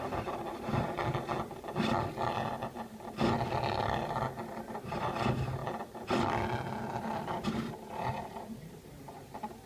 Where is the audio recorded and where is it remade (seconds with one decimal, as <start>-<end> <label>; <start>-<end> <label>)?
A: 0.0-1.0 remade; 1.0-4.7 recorded; 4.7-5.6 remade; 5.6-7.0 recorded; 7.0-9.7 remade